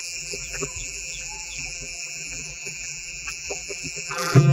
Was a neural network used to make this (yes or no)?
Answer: yes